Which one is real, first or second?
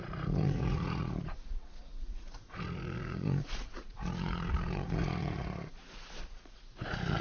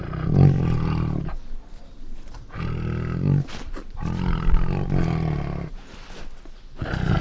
second